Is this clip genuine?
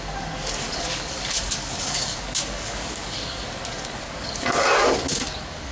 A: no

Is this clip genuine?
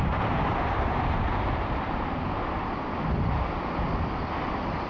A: yes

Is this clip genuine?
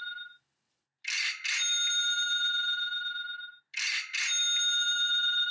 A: yes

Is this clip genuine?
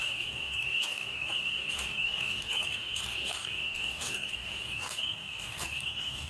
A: no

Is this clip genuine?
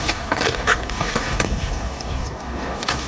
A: no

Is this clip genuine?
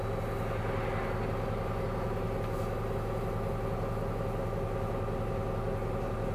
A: yes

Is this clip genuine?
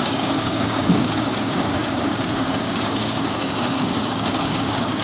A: no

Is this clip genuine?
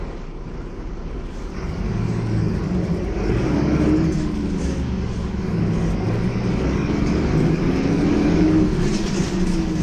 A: no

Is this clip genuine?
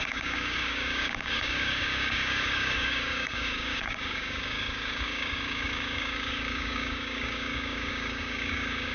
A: no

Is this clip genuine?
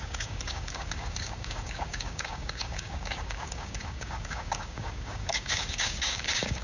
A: no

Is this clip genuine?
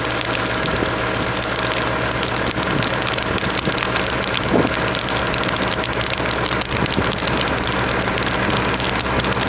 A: yes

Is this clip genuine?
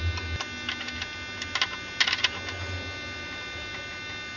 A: yes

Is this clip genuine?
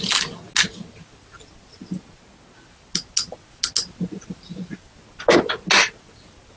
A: yes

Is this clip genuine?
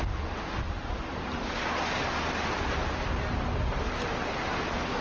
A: yes